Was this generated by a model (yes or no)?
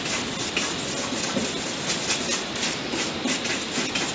no